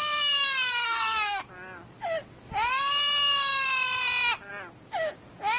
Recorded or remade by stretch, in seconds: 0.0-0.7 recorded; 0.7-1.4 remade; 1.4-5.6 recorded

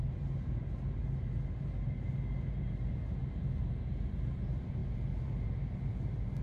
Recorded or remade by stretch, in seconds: 0.0-6.4 recorded

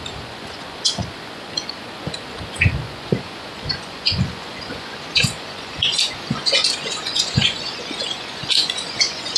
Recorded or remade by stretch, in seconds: 0.0-9.4 remade

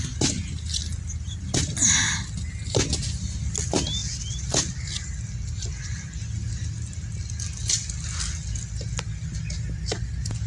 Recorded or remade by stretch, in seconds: 0.0-10.5 recorded

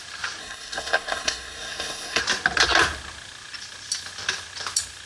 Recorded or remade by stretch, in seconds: 0.0-0.4 recorded; 0.4-2.2 remade; 2.2-5.1 recorded